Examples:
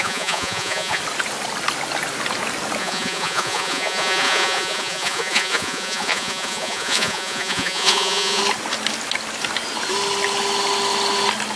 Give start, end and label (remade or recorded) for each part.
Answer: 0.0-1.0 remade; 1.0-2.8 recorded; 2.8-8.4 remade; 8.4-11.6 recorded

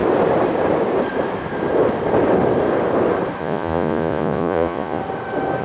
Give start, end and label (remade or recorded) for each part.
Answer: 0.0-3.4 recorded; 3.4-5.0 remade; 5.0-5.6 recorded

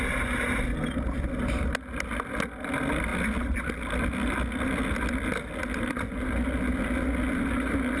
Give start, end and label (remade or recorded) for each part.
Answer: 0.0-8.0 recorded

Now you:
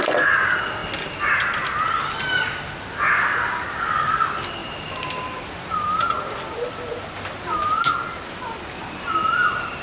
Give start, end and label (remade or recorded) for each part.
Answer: 0.0-9.8 recorded

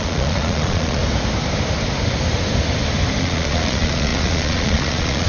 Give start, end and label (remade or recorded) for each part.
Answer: 0.0-1.0 remade; 1.0-3.2 recorded; 3.2-5.3 remade

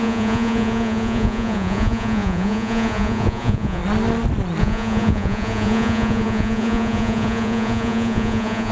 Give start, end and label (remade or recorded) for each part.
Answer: 0.0-3.8 remade; 3.8-4.6 recorded; 4.6-8.7 remade